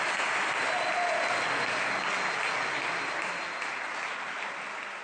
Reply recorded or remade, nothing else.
recorded